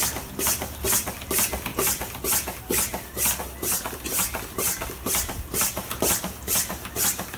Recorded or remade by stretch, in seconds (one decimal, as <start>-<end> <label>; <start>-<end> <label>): 0.0-7.4 recorded